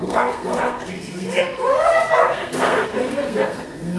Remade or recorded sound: remade